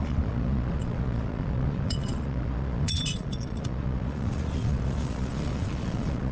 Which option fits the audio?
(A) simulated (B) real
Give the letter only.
A